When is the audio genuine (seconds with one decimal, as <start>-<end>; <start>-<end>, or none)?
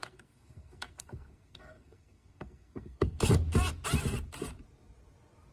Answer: 3.3-5.5